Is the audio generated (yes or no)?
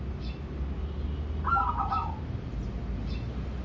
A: no